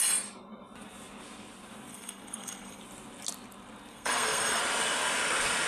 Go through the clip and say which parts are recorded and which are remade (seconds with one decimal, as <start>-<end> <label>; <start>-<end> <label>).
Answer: 0.0-1.9 recorded; 1.9-2.8 remade; 2.8-3.9 recorded; 3.9-4.6 remade; 4.6-5.7 recorded